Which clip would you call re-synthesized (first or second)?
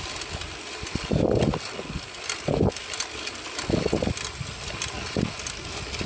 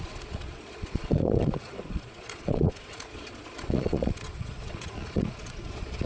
second